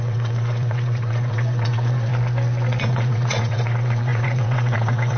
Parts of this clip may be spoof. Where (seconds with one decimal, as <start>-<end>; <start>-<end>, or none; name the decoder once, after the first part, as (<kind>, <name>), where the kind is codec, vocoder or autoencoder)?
0.0-2.1 (vocoder, WaveNeXt); 2.8-5.2